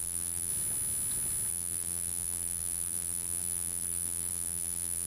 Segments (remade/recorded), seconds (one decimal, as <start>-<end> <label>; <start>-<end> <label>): 0.0-0.5 remade; 0.5-1.5 recorded; 1.5-5.1 remade